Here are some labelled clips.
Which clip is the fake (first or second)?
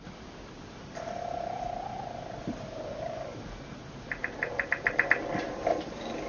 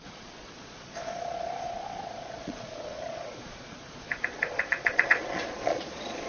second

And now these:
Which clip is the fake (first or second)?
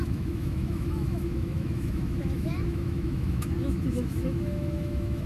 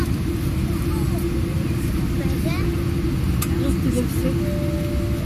first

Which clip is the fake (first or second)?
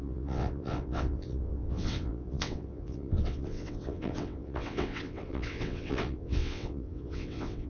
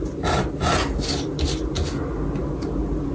first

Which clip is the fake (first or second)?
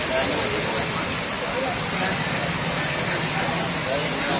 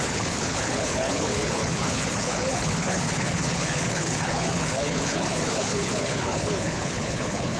second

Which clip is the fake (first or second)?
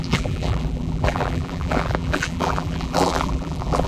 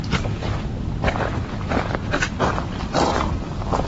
first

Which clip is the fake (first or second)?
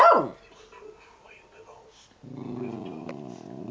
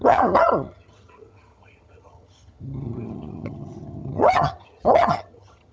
second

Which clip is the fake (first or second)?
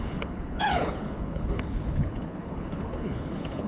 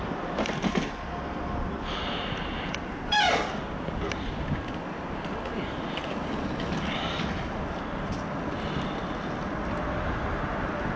first